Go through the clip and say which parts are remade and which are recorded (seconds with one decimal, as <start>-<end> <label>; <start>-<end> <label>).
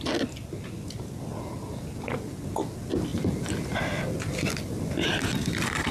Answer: 0.0-5.9 recorded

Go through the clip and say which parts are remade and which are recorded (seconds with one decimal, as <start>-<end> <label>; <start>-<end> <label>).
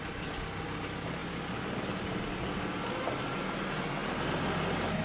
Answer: 0.0-5.0 recorded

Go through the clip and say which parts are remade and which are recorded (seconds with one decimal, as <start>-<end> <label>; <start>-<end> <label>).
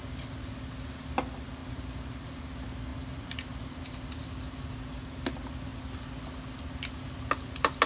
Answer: 0.0-1.6 recorded; 1.6-2.4 remade; 2.4-2.9 recorded; 2.9-4.1 remade; 4.1-7.9 recorded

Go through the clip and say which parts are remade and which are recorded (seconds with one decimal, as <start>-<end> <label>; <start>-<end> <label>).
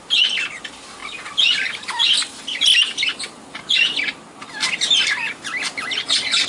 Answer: 0.0-6.5 recorded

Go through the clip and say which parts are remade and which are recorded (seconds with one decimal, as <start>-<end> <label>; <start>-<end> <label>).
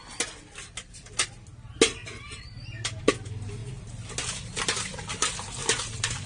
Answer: 0.0-2.0 recorded; 2.0-3.1 remade; 3.1-5.6 recorded; 5.6-6.3 remade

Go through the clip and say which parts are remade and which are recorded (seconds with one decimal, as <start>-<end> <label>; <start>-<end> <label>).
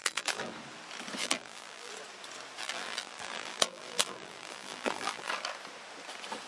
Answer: 0.0-0.5 remade; 0.5-1.2 recorded; 1.2-1.9 remade; 1.9-2.6 recorded; 2.6-5.3 remade; 5.3-6.5 recorded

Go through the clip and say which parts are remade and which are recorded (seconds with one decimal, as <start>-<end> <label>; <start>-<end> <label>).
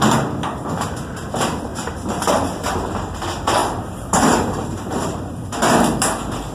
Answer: 0.0-3.6 recorded; 3.6-5.4 remade; 5.4-6.5 recorded